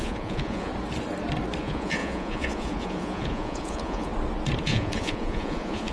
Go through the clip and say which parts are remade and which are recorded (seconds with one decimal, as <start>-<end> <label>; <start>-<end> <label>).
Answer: 0.0-0.7 remade; 0.7-1.6 recorded; 1.6-4.1 remade; 4.1-4.6 recorded; 4.6-5.9 remade